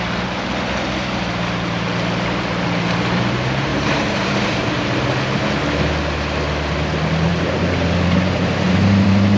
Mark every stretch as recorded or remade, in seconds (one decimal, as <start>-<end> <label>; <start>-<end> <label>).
0.0-3.7 recorded; 3.7-4.5 remade; 4.5-7.3 recorded; 7.3-9.4 remade